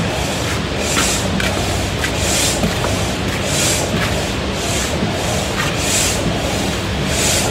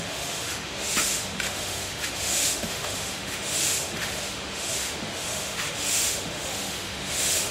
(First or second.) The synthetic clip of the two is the second